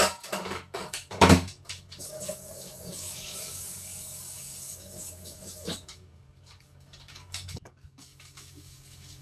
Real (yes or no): no